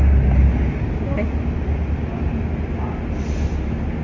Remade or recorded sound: recorded